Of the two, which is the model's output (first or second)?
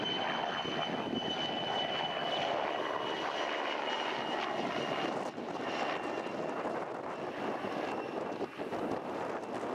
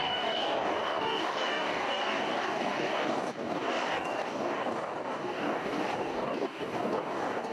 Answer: second